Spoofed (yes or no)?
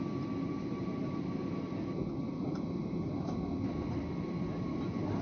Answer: no